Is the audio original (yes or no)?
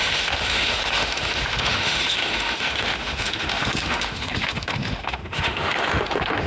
no